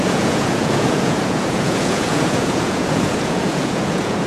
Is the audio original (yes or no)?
no